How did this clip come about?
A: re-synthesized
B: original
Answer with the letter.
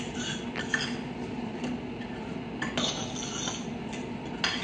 B